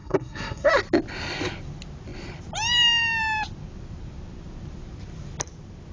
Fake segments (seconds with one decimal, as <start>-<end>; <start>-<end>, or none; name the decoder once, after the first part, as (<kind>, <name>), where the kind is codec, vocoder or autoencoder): 0.0-0.7 (codec, SNAC)